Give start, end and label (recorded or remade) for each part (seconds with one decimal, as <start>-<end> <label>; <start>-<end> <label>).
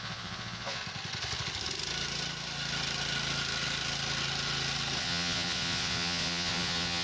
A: 0.0-0.8 remade; 0.8-5.0 recorded; 5.0-7.0 remade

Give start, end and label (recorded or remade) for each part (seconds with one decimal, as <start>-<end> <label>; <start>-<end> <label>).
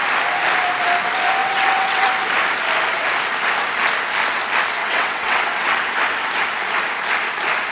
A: 0.0-1.4 recorded; 1.4-2.1 remade; 2.1-4.8 recorded; 4.8-5.9 remade; 5.9-7.7 recorded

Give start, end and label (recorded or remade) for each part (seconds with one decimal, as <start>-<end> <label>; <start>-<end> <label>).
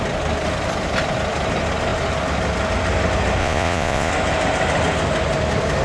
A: 0.0-3.4 recorded; 3.4-4.1 remade; 4.1-5.8 recorded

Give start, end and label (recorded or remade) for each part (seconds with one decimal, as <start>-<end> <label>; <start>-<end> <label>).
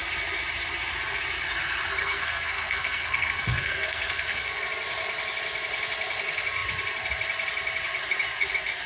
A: 0.0-2.0 recorded; 2.0-4.6 remade; 4.6-8.9 recorded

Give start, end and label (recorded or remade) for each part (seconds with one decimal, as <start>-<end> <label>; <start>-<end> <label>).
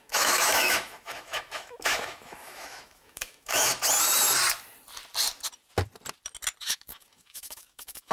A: 0.0-3.7 remade; 3.7-6.6 recorded; 6.6-8.1 remade